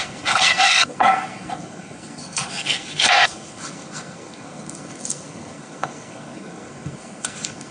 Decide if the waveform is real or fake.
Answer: fake